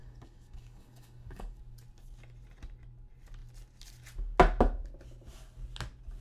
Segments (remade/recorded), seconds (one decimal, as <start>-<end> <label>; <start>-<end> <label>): 0.0-1.6 remade; 1.6-6.2 recorded